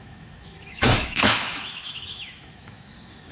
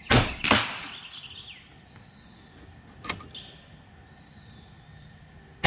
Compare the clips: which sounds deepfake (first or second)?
first